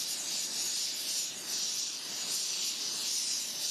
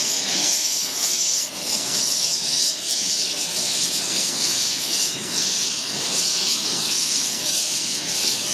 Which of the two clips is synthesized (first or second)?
second